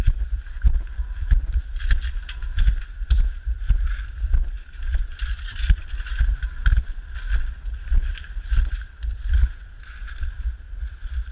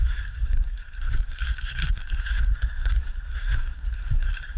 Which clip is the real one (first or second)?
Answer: first